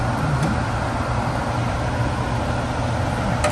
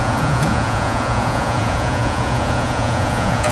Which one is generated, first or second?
second